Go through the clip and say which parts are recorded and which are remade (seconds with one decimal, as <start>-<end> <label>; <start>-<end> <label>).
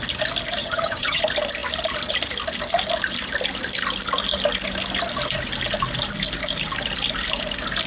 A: 0.0-0.6 recorded; 0.6-1.2 remade; 1.2-7.9 recorded